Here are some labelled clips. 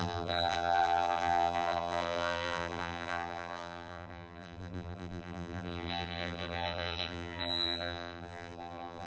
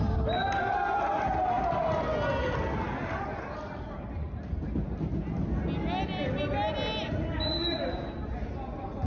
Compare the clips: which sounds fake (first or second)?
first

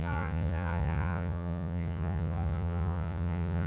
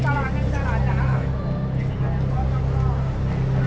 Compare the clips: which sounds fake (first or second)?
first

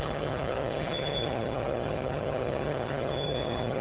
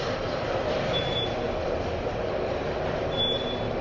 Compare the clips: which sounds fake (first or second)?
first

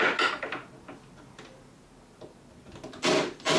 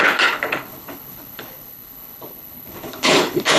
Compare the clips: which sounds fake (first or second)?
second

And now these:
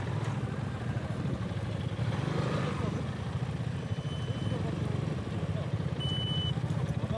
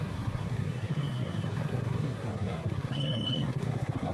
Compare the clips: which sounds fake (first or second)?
second